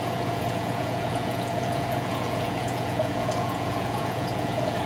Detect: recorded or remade remade